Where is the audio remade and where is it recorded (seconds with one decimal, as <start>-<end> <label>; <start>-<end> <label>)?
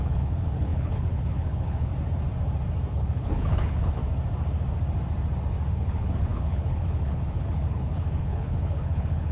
0.0-1.9 remade; 1.9-2.9 recorded; 2.9-4.0 remade; 4.0-5.7 recorded; 5.7-9.3 remade